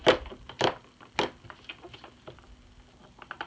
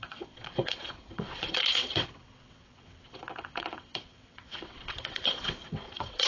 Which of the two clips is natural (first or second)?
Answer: first